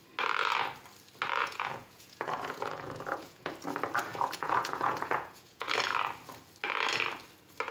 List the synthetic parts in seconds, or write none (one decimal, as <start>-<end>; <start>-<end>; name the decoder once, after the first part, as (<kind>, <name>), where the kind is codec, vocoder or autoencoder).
1.4-3.5 (vocoder, Vocos); 4.1-5.7